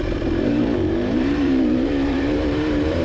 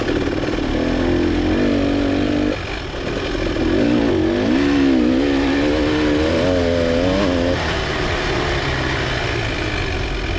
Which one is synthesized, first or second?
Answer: first